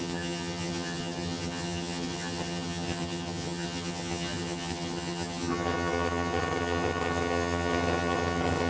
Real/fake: fake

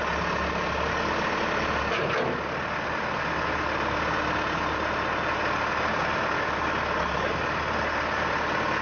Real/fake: real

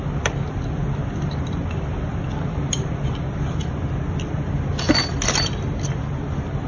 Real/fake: real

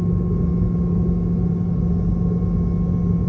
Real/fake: real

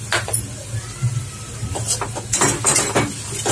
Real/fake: real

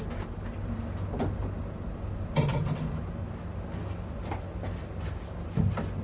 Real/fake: real